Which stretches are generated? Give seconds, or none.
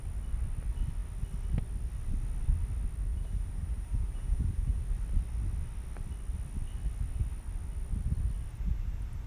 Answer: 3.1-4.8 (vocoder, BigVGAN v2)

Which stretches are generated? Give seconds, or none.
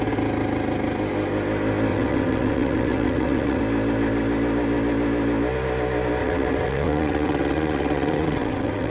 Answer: 1.9-3.6 (vocoder, WaveNeXt); 6.2-8.9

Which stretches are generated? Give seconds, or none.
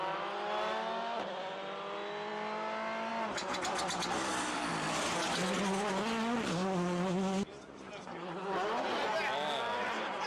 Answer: none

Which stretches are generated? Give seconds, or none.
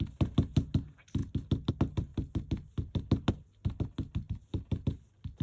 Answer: none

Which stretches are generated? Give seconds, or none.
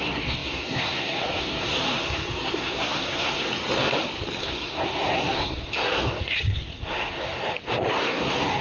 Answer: 0.0-3.5 (codec, SNAC); 4.4-7.4; 7.9-8.6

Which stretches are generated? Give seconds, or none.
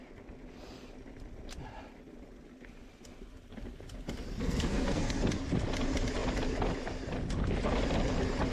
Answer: 4.4-5.2 (codec, SNAC)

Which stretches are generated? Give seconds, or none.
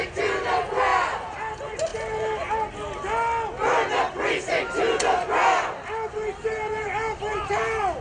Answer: none